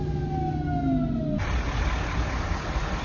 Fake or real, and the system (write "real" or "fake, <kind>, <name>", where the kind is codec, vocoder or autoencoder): real